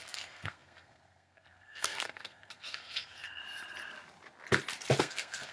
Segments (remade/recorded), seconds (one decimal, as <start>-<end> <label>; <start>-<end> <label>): 0.0-3.4 remade; 3.4-5.0 recorded; 5.0-5.5 remade